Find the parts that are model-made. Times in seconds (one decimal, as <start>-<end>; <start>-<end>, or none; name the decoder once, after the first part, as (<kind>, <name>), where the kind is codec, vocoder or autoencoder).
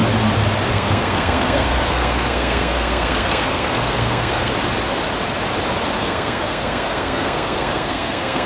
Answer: 0.7-4.5 (codec, SNAC); 6.0-8.5